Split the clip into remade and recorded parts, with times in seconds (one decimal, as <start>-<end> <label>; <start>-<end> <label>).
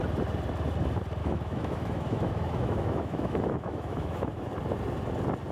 0.0-1.2 recorded; 1.2-4.5 remade; 4.5-5.5 recorded